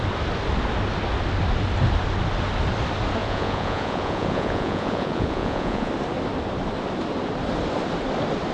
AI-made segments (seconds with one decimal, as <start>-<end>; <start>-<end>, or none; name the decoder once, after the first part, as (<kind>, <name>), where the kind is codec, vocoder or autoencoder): 3.2-5.9 (vocoder, Vocos)